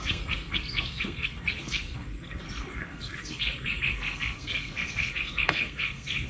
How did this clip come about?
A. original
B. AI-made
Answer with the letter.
B